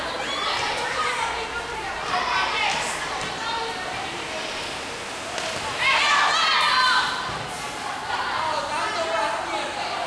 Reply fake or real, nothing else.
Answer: real